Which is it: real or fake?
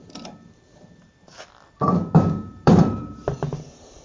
fake